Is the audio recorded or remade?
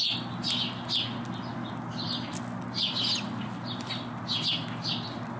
recorded